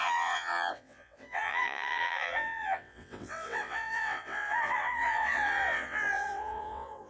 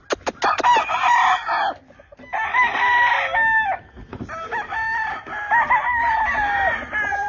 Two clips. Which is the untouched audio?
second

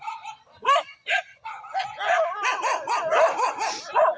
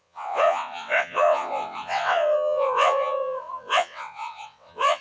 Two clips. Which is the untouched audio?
first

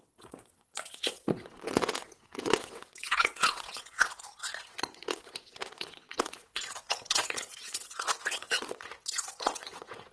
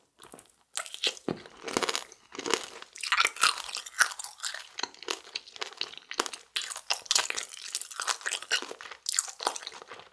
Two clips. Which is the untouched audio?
second